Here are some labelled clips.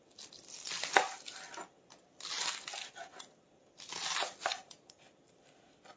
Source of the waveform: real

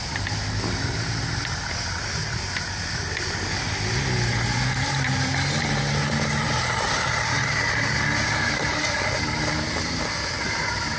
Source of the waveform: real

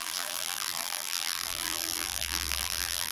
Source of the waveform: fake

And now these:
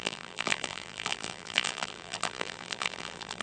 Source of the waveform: fake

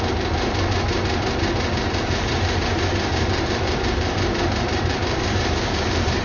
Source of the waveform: fake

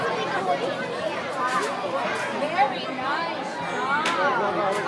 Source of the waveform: real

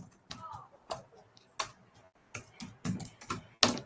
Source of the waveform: real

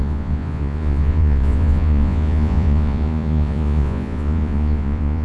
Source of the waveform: fake